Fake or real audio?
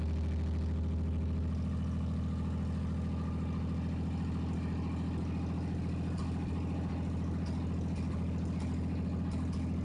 real